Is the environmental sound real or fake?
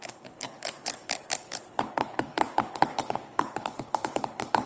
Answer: fake